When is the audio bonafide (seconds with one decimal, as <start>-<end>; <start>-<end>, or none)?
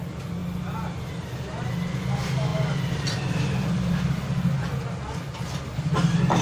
0.0-6.4